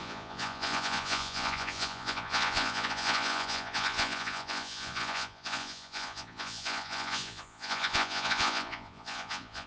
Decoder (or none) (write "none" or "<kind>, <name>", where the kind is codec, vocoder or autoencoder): vocoder, Vocos